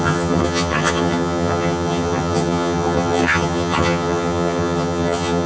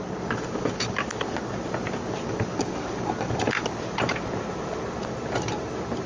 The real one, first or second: second